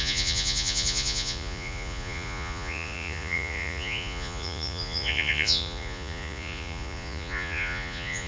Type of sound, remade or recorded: remade